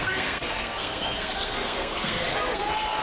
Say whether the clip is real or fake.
fake